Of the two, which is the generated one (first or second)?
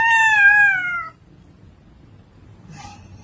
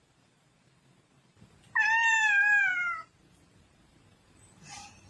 second